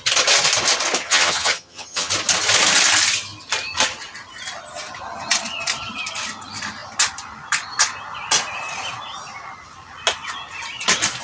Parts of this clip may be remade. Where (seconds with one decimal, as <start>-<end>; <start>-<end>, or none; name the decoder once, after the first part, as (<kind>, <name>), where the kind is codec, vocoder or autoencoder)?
1.0-2.1 (vocoder, HiFi-GAN)